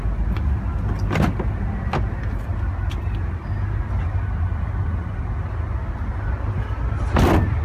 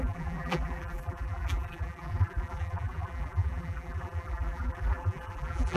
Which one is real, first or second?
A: first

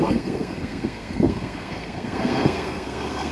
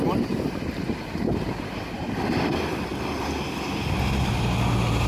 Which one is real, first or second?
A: second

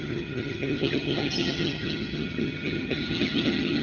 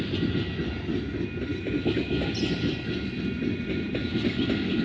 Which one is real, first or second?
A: second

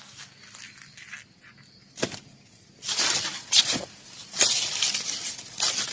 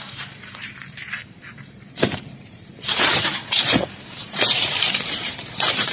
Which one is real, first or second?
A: first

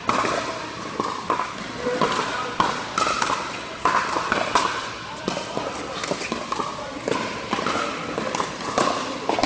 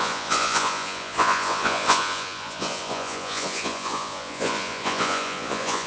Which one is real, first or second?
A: first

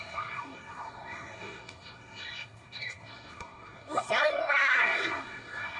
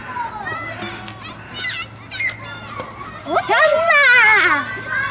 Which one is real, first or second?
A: second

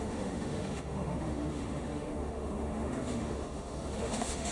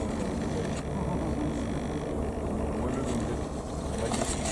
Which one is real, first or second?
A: second